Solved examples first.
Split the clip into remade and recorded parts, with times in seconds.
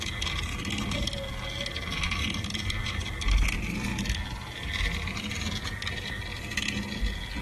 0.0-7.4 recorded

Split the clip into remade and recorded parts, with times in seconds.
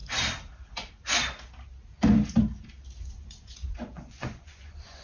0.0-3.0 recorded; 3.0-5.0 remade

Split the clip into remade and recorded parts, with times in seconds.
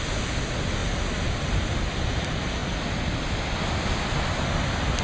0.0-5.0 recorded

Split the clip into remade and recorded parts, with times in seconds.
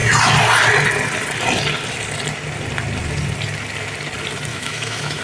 0.0-4.5 recorded; 4.5-5.2 remade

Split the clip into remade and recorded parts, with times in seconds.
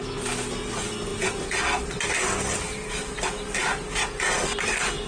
0.0-5.1 recorded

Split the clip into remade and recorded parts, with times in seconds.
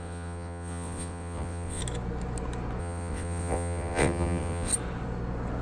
0.0-1.8 remade; 1.8-2.8 recorded; 2.8-4.7 remade; 4.7-5.6 recorded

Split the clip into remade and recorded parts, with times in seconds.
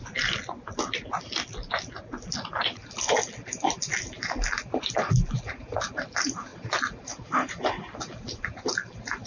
0.0-9.3 recorded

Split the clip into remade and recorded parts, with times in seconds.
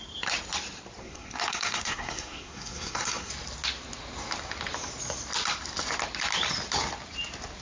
0.0-1.0 recorded; 1.0-3.3 remade; 3.3-7.6 recorded